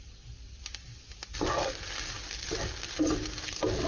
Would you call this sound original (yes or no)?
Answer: yes